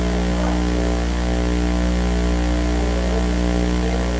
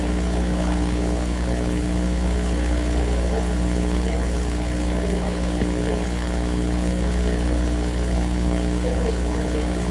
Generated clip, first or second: second